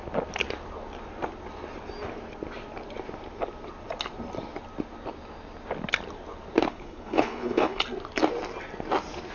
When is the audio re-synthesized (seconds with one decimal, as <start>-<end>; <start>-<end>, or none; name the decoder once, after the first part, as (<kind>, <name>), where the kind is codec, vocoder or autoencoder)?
6.7-7.8 (codec, HILCodec)